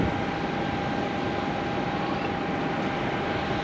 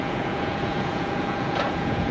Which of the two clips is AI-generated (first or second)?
second